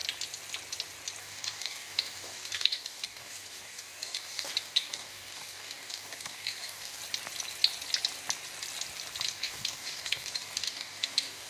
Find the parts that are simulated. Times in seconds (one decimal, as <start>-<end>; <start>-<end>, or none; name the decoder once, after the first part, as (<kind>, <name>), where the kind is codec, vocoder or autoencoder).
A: 1.2-7.0 (codec, DAC); 9.3-11.5